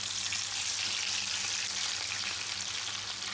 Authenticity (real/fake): real